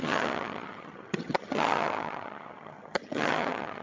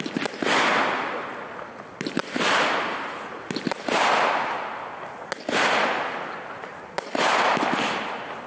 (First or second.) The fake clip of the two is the first